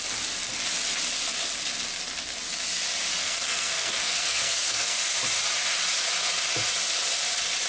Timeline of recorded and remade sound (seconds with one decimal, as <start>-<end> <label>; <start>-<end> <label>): 0.0-3.2 recorded; 3.2-5.0 remade; 5.0-7.7 recorded